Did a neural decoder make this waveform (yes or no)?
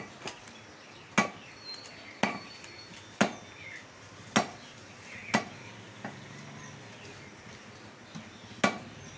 no